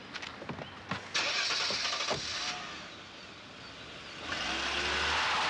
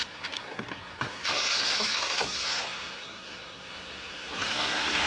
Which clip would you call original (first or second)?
first